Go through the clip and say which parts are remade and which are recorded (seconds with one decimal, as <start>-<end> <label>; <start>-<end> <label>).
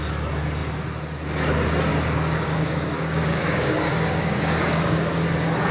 0.0-1.9 recorded; 1.9-5.3 remade; 5.3-5.7 recorded